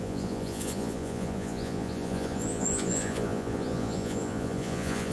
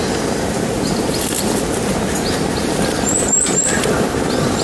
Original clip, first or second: second